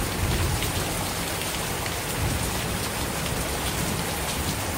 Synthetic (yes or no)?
no